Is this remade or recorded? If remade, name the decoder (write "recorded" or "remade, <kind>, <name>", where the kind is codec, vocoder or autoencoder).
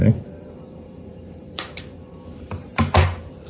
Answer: remade, vocoder, BigVGAN v2